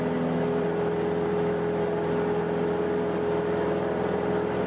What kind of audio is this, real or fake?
real